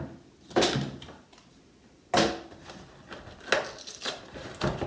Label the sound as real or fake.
real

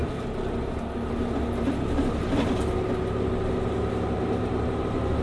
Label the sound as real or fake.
real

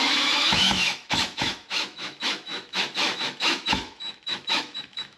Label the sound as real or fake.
fake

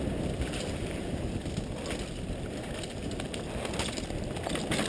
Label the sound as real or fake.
real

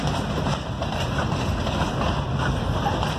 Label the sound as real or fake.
real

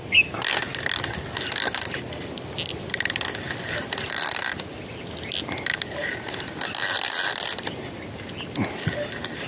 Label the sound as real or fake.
real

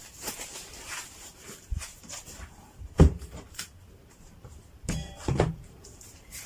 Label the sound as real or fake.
fake